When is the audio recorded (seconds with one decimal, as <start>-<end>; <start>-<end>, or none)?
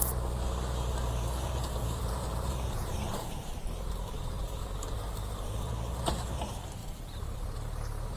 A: 0.0-1.8; 5.7-6.8; 7.4-8.2